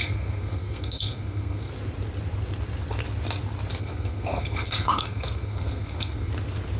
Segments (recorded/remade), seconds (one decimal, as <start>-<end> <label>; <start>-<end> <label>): 0.0-1.7 remade; 1.7-3.8 recorded; 3.8-6.3 remade; 6.3-6.8 recorded